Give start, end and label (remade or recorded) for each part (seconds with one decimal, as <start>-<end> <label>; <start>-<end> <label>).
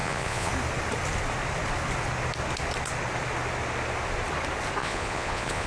0.0-0.5 remade; 0.5-4.8 recorded; 4.8-5.7 remade